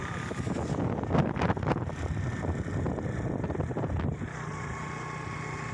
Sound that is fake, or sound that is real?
real